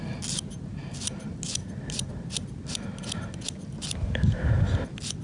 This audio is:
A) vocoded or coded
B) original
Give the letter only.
B